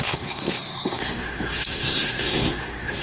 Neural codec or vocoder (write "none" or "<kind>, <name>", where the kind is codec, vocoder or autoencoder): codec, SNAC